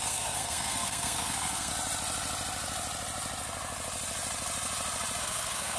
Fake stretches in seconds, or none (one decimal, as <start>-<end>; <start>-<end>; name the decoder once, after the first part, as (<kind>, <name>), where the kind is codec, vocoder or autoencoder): 0.0-1.7 (codec, SNAC); 5.2-5.8